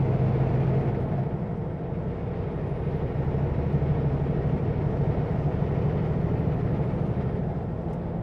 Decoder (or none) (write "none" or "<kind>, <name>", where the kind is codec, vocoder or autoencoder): none